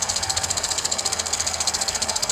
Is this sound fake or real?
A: fake